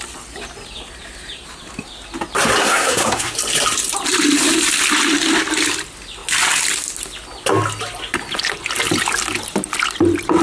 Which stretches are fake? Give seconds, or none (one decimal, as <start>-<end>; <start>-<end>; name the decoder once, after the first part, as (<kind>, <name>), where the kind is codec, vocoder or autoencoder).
2.6-3.3 (codec, SNAC)